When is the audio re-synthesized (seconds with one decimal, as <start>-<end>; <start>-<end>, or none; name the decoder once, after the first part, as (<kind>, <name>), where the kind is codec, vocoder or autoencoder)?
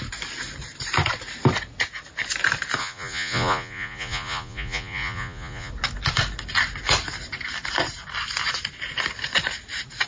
2.8-5.7 (vocoder, Vocos)